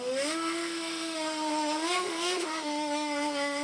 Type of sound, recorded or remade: remade